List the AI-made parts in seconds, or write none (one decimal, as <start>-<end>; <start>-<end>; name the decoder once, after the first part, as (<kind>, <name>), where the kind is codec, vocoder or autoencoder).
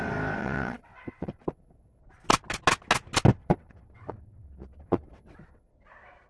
0.4-2.0 (vocoder, WaveNeXt); 3.4-5.7